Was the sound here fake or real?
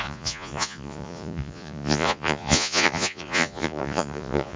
fake